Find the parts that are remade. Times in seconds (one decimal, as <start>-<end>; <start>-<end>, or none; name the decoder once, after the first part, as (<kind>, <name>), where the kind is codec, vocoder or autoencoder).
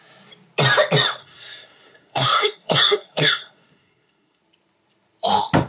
1.2-4.4 (codec, SNAC)